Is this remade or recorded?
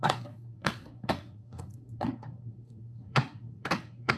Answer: remade